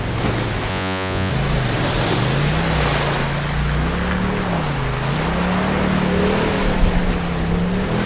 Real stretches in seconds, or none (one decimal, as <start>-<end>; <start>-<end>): 0.0-0.7; 1.3-8.1